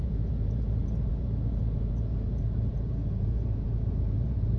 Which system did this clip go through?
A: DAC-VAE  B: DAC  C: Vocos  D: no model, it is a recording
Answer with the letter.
C